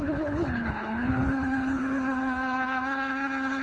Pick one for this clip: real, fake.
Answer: fake